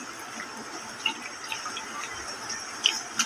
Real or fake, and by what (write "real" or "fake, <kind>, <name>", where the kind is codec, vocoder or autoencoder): real